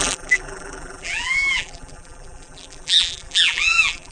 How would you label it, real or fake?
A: fake